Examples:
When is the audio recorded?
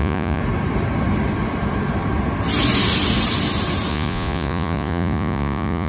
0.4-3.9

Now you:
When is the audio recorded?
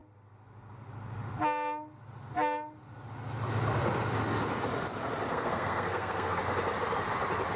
0.0-5.3; 6.4-7.6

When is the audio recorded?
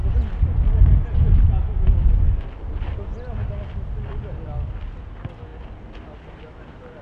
0.0-7.0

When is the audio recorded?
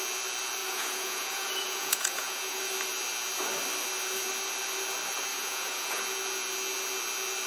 0.0-0.6; 2.6-5.3; 6.0-7.5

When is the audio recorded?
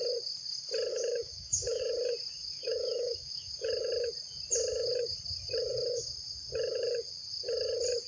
0.0-0.9; 1.8-2.4; 3.5-8.1